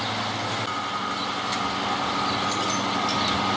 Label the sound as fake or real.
real